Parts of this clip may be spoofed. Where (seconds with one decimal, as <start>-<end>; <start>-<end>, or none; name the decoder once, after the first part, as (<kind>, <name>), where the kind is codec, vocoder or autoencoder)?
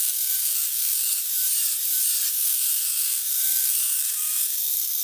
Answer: 0.0-1.3 (codec, SNAC); 2.3-5.0